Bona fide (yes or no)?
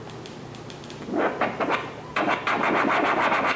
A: yes